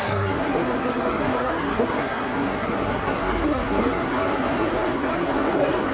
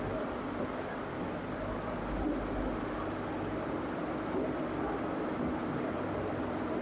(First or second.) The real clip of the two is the second